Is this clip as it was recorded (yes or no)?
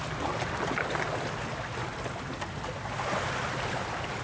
yes